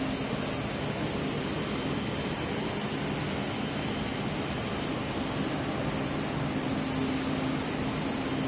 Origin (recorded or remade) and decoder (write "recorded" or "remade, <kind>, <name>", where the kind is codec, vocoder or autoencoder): recorded